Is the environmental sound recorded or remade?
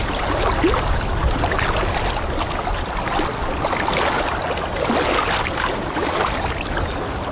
recorded